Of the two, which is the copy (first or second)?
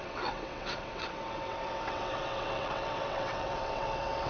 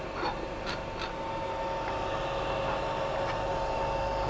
first